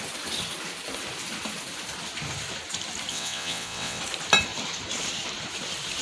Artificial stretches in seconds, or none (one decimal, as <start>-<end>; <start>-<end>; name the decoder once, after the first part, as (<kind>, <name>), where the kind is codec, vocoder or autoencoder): 3.1-4.0 (vocoder, WaveNeXt)